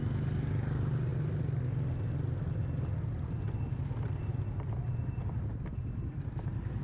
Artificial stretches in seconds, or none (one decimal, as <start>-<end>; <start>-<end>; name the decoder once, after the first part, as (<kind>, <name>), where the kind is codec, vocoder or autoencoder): none